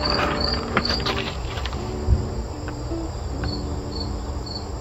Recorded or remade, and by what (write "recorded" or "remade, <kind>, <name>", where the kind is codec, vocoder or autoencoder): remade, vocoder, BigVGAN v2